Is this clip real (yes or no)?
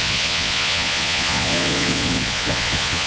no